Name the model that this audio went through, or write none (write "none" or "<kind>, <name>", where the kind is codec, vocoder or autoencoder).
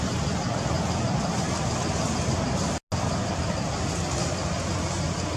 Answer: none